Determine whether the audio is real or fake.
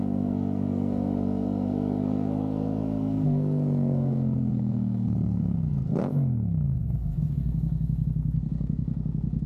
fake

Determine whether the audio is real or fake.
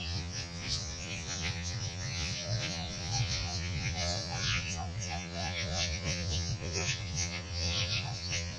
fake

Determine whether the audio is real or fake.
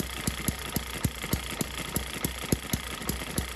real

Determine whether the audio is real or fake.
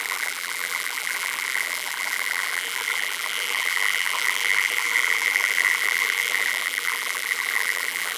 fake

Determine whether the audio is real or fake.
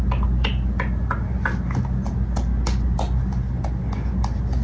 real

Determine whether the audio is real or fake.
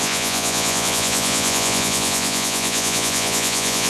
fake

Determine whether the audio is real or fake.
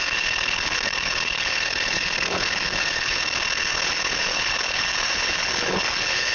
fake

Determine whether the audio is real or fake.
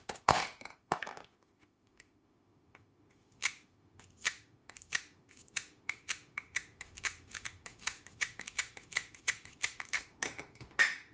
fake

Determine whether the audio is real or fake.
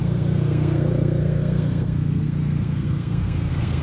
fake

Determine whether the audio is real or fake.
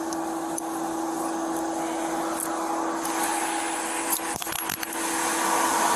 real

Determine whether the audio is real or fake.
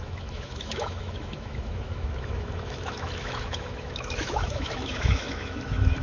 fake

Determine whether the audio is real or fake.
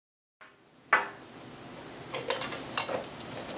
real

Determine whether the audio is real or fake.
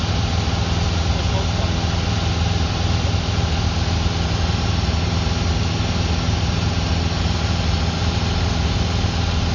real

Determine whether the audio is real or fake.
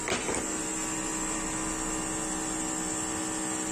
real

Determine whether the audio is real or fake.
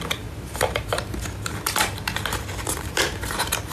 fake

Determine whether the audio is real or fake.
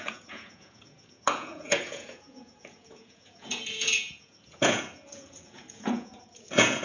fake